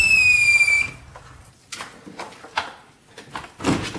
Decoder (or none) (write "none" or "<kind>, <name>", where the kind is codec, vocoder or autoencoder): none